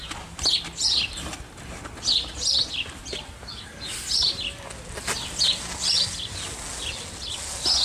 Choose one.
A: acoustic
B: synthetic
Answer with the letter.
A